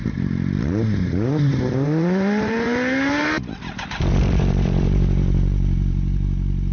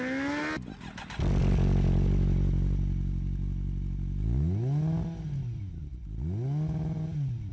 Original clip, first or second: second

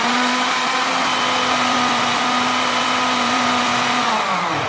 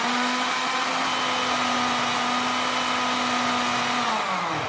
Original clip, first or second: second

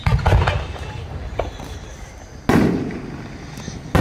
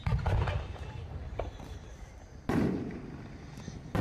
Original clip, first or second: first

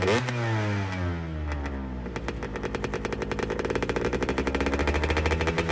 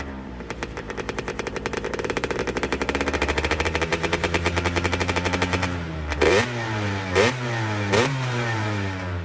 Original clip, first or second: first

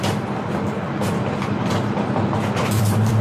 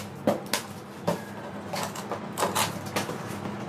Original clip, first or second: second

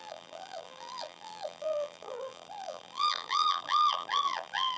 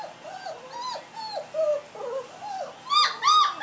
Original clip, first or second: second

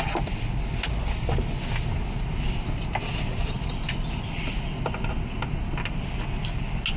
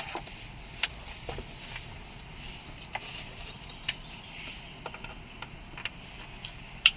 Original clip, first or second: first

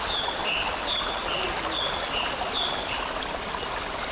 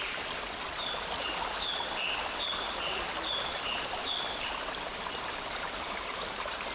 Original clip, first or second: first